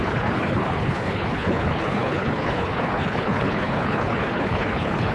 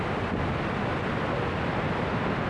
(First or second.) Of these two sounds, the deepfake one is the first